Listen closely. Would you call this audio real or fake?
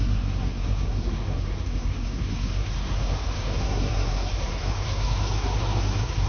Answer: fake